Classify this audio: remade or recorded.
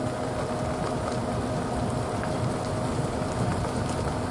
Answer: recorded